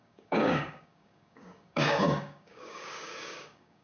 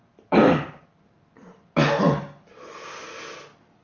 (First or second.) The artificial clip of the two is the first